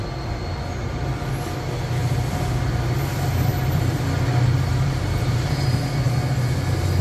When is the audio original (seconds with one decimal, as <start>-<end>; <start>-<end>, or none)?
0.0-3.5; 4.0-4.7; 5.7-7.0